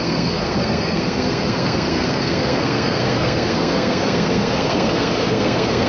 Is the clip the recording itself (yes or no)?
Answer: no